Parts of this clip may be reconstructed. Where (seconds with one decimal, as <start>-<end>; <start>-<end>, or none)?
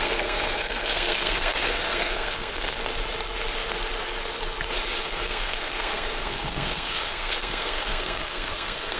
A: 0.0-2.8; 5.0-9.0